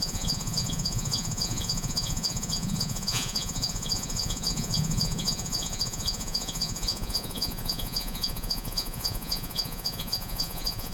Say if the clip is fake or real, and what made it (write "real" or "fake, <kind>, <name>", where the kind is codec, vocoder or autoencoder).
fake, vocoder, Vocos